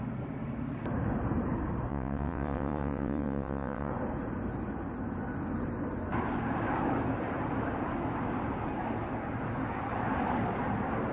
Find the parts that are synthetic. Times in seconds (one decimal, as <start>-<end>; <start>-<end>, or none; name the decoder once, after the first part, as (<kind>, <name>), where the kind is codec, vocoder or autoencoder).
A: 1.9-3.9 (vocoder, WaveNeXt)